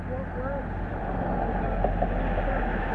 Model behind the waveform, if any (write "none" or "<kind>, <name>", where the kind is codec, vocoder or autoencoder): none